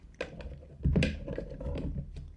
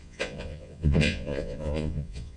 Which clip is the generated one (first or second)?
second